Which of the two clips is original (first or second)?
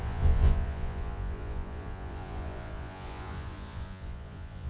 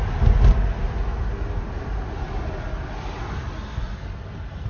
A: second